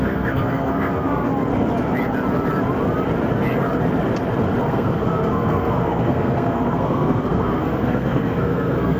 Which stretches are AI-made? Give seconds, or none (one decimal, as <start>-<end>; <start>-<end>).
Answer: 0.0-1.3; 4.7-9.0